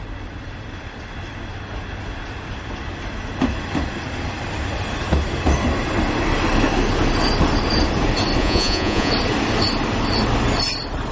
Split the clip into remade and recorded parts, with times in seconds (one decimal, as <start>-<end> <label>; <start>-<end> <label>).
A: 0.0-8.4 recorded; 8.4-9.1 remade; 9.1-11.1 recorded